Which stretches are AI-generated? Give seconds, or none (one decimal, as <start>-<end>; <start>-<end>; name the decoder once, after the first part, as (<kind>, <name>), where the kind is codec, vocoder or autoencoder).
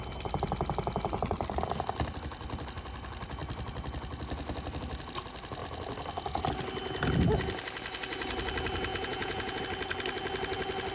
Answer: 8.9-9.6 (vocoder, Vocos)